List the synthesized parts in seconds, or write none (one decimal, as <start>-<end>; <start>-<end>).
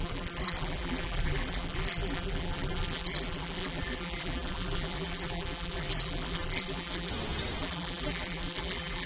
0.0-7.1; 7.6-9.1